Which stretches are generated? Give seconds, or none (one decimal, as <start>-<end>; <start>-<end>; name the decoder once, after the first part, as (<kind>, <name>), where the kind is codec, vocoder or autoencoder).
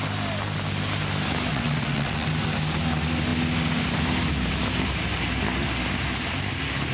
1.5-2.3 (vocoder, WaveNeXt)